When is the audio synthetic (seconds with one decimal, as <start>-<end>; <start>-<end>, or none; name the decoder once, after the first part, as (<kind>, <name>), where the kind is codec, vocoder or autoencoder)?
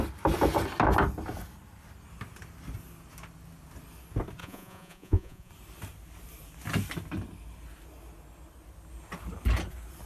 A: 4.4-5.5 (vocoder, Vocos)